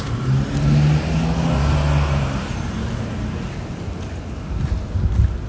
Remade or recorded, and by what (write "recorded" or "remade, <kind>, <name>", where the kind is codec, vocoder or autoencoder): recorded